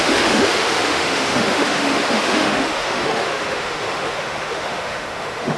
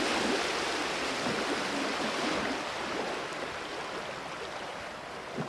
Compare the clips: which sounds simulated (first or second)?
first